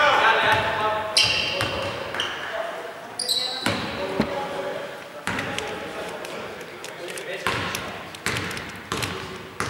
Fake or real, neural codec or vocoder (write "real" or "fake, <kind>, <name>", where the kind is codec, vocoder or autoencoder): real